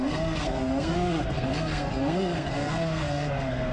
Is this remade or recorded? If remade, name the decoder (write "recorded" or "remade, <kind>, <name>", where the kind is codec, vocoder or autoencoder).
remade, codec, SNAC